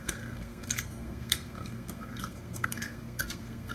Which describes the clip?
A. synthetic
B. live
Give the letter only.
A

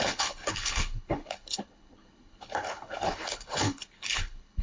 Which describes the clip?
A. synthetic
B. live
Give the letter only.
A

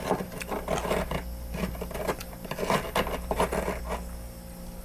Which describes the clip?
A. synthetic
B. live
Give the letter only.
B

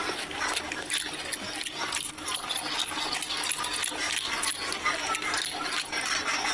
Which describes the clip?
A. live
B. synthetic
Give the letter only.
A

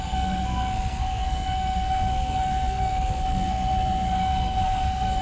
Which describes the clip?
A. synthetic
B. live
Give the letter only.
A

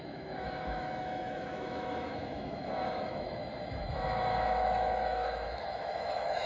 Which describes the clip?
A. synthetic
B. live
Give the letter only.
A